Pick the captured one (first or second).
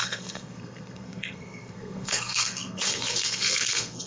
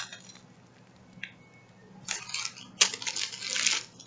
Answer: second